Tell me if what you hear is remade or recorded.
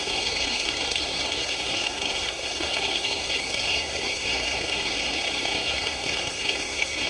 remade